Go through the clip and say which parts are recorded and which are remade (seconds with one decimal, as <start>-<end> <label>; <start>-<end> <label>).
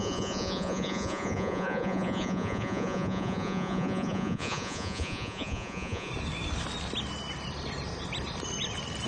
0.0-6.1 remade; 6.1-9.1 recorded